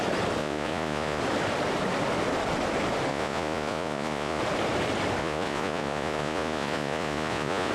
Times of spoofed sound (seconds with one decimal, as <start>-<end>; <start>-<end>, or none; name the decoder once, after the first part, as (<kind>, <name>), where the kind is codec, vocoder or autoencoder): 0.4-1.2 (vocoder, Vocos); 3.1-4.4; 5.2-7.7